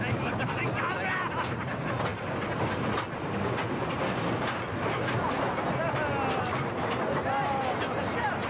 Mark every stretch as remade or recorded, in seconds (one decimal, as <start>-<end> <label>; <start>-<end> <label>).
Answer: 0.0-8.5 recorded